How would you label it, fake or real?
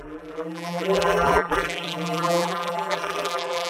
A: fake